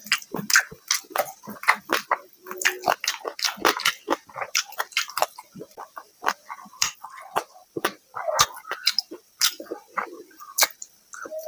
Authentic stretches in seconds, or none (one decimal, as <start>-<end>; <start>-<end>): 0.0-4.5